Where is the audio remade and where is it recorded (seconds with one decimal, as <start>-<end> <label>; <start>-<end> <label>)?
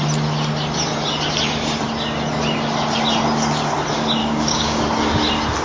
0.0-4.2 recorded; 4.2-4.8 remade; 4.8-5.6 recorded